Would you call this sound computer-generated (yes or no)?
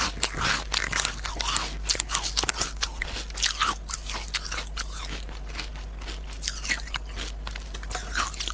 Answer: no